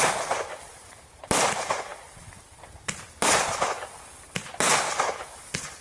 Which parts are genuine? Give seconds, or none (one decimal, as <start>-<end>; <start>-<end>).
1.9-4.8